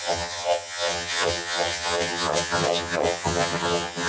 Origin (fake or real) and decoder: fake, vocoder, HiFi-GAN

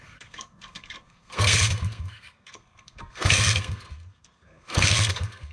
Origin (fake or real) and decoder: fake, codec, SNAC